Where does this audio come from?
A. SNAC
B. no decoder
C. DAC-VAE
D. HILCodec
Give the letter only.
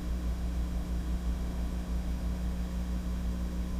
C